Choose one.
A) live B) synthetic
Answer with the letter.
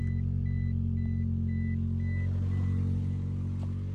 A